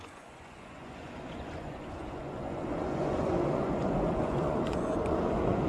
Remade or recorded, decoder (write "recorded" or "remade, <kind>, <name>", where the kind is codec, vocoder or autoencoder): remade, vocoder, Vocos